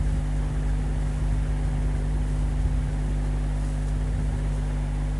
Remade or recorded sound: recorded